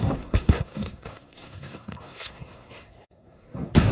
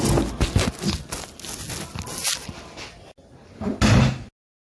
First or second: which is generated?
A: first